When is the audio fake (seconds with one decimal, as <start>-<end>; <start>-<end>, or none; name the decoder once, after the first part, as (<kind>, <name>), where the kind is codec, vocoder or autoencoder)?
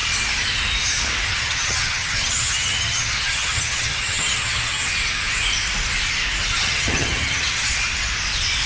1.3-4.9 (vocoder, HiFi-GAN); 6.5-7.7